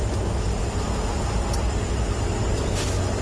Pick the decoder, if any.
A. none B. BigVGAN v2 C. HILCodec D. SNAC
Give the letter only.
A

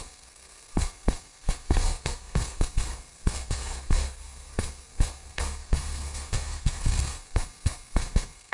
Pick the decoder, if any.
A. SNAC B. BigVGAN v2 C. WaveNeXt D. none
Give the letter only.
A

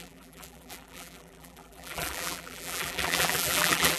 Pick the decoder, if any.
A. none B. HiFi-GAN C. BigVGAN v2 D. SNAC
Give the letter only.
C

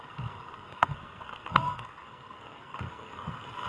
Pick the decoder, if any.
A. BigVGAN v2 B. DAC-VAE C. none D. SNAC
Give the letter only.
D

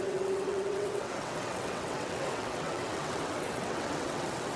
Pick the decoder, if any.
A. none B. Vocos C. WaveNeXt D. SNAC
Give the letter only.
C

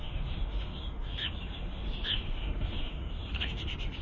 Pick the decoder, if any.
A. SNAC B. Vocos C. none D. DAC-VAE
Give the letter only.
D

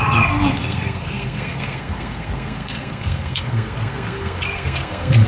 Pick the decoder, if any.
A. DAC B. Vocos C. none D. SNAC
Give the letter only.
D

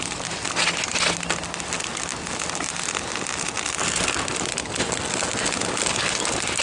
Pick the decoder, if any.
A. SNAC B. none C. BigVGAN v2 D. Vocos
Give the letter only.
B